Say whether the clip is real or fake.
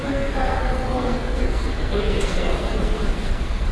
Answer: fake